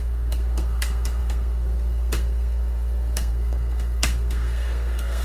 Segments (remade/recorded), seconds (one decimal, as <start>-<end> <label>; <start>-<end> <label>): 0.0-5.2 remade

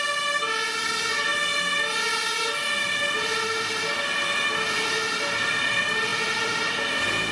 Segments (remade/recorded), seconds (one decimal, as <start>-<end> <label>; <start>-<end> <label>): 0.0-7.3 recorded

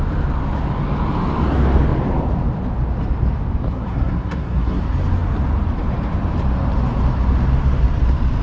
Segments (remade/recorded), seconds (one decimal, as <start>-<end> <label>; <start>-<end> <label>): 0.0-3.7 recorded; 3.7-4.8 remade; 4.8-8.4 recorded

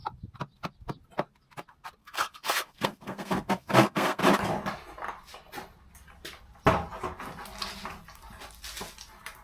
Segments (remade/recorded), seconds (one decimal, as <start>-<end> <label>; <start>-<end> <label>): 0.0-2.0 recorded; 2.0-4.2 remade; 4.2-9.4 recorded

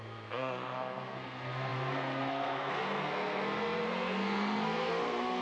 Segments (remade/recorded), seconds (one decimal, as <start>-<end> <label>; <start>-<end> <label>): 0.0-5.4 remade

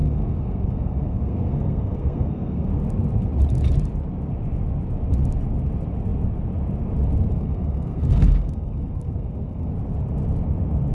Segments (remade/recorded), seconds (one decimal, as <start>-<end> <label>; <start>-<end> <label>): 0.0-2.7 remade; 2.7-7.3 recorded; 7.3-9.7 remade; 9.7-10.9 recorded

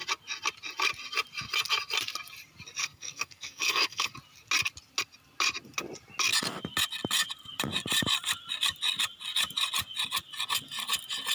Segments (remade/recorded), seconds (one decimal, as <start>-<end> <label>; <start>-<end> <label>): 0.0-2.8 recorded; 2.8-4.1 remade; 4.1-11.3 recorded